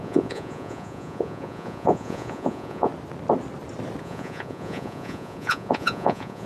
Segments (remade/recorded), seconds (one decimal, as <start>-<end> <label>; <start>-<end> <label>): 0.0-2.9 remade; 2.9-4.0 recorded; 4.0-6.5 remade